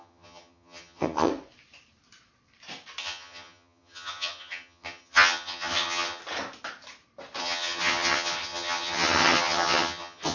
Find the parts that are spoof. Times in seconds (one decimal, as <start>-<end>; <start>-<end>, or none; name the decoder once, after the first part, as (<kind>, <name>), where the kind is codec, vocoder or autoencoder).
0.0-1.3 (vocoder, HiFi-GAN); 3.0-6.2; 7.4-10.3